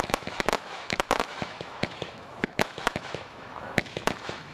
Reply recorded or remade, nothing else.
remade